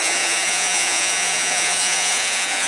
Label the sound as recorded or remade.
remade